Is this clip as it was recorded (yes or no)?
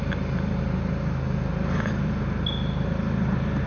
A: yes